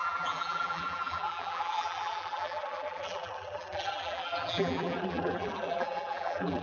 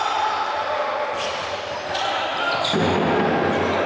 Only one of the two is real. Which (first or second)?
second